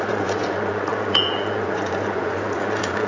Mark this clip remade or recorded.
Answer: remade